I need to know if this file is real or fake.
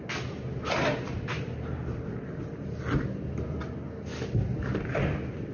real